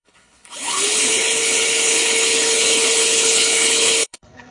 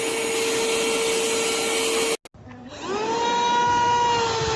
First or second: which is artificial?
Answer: first